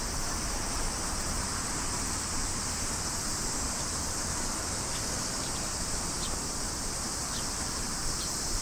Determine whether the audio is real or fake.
fake